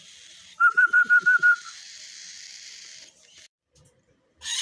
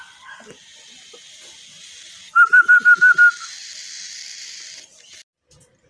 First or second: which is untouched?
second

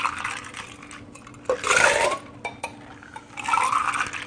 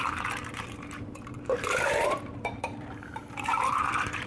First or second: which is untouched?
first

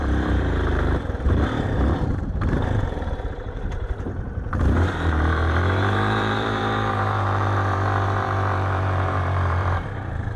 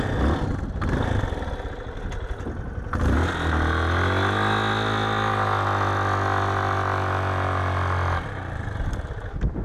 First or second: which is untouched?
second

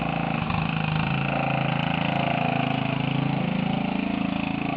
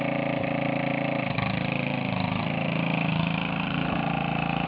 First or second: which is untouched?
first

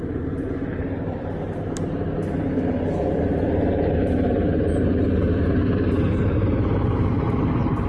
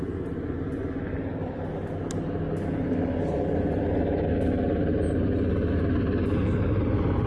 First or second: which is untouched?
second